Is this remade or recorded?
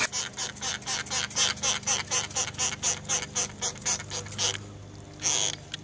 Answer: recorded